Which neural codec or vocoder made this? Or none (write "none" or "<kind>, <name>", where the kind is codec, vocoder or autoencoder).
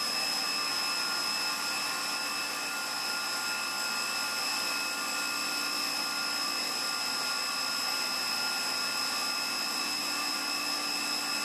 none